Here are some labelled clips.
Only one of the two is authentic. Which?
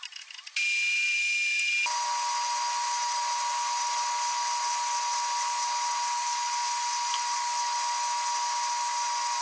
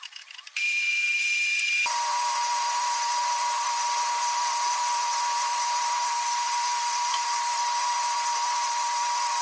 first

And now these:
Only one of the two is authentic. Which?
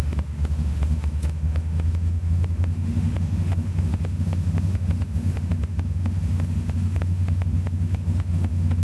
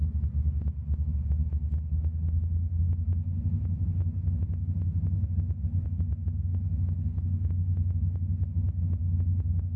second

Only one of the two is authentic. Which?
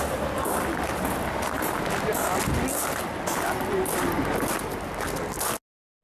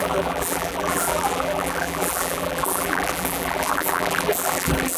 first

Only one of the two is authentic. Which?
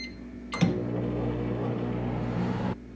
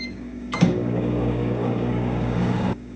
first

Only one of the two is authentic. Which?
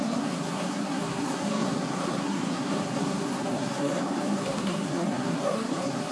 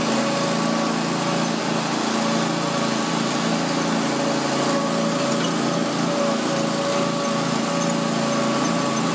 second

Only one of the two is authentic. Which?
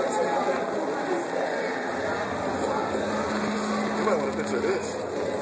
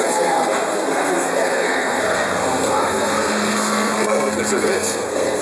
first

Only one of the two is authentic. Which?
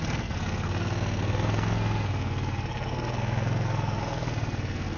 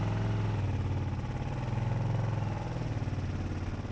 second